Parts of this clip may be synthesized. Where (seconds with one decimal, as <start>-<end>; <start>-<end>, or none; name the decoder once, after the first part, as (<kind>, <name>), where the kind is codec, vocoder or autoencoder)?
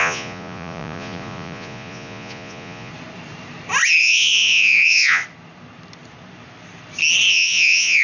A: 0.0-2.9 (vocoder, Vocos); 4.0-5.2; 7.3-8.0